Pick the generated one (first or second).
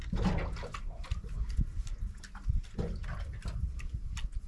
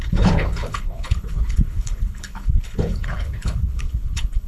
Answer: second